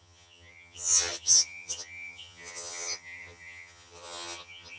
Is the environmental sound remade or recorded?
remade